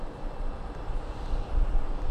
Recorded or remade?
recorded